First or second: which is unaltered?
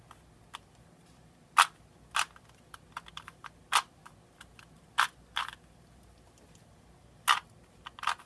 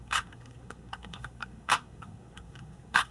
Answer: first